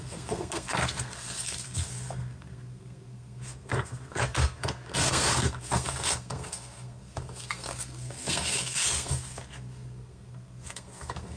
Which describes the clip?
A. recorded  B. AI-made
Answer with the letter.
B